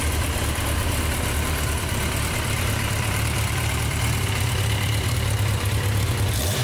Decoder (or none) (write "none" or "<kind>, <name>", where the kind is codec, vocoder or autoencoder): vocoder, BigVGAN v2